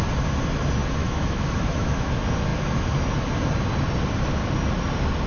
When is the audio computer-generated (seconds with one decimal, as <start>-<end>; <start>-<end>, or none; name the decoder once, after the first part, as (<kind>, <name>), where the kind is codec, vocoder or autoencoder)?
1.0-2.1 (autoencoder, DAC-VAE)

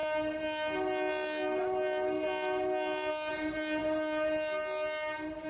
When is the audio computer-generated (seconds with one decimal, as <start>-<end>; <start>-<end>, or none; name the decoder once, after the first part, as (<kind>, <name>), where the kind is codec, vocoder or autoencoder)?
none

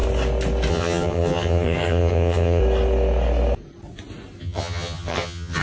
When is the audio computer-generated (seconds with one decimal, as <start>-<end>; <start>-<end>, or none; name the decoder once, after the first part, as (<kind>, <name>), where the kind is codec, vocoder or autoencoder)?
0.7-2.6 (vocoder, HiFi-GAN); 4.4-5.6

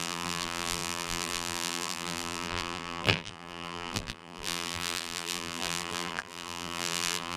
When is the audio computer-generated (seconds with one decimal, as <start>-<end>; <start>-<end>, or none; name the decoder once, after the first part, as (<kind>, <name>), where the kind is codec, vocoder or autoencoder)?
0.0-7.4 (vocoder, BigVGAN v2)

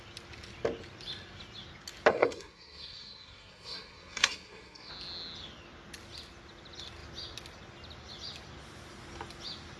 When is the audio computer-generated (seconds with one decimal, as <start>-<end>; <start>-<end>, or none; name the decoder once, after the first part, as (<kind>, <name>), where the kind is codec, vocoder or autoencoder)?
2.1-4.9 (codec, SNAC)